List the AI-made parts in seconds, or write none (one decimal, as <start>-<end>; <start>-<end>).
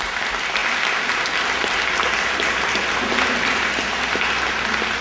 none